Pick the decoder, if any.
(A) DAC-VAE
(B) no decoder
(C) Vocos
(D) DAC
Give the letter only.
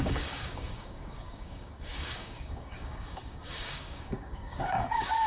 D